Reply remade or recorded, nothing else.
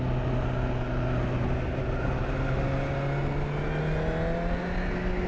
recorded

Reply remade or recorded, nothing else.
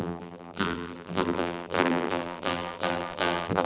remade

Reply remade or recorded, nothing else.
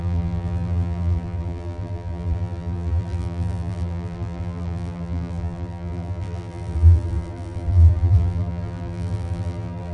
remade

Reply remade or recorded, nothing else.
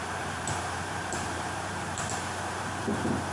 remade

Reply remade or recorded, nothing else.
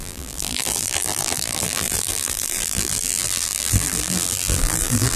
remade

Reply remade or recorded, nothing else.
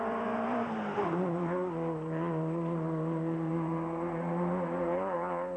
remade